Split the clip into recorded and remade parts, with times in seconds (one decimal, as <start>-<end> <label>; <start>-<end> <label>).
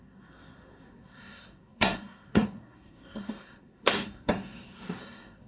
0.0-5.5 remade